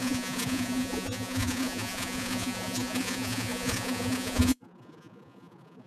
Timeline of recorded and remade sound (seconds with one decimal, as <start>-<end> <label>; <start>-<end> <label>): 0.0-5.9 remade